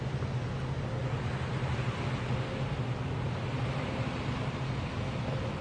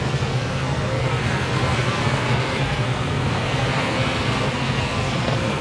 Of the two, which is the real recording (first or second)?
first